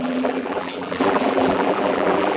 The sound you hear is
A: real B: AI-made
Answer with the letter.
B